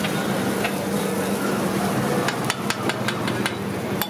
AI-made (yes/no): yes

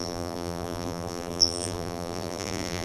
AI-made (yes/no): yes